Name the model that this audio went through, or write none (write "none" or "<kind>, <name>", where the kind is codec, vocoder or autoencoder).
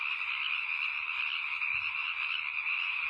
none